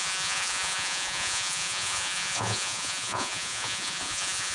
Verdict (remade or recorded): remade